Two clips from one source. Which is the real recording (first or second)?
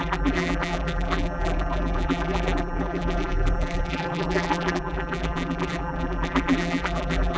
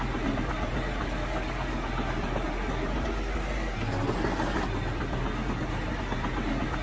second